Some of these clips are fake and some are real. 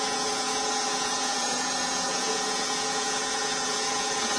fake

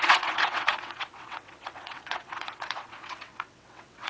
fake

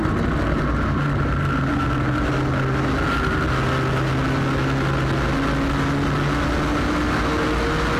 real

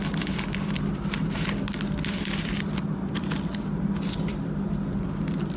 real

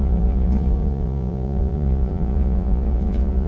fake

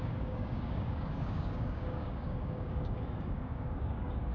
fake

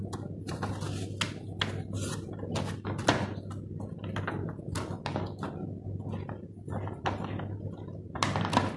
real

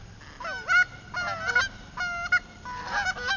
real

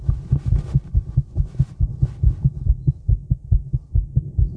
real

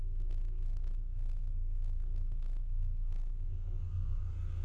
fake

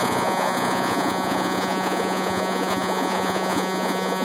fake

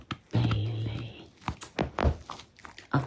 real